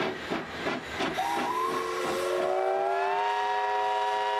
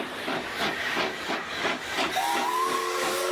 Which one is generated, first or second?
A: second